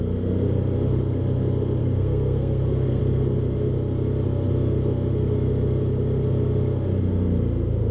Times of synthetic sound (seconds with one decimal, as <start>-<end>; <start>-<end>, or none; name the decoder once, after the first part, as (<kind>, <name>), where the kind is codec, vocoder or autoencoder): 1.8-3.0 (codec, SNAC)